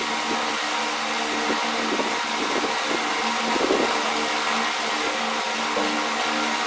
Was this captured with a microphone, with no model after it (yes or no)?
yes